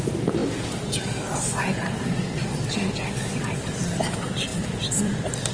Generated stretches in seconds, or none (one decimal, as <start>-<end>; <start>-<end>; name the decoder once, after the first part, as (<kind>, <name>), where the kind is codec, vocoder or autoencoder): 0.0-5.5 (vocoder, BigVGAN v2)